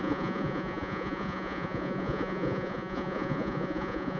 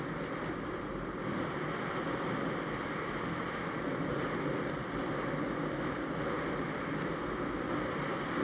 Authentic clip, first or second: second